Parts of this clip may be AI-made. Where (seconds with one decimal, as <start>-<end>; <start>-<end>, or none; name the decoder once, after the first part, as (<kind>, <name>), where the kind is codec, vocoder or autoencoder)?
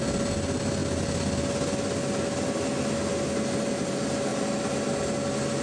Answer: none